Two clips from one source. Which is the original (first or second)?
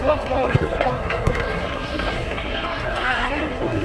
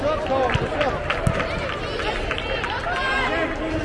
second